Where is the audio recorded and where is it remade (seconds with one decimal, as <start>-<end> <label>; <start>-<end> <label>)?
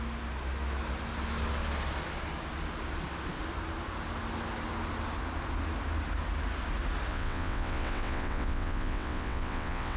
0.0-7.1 recorded; 7.1-10.0 remade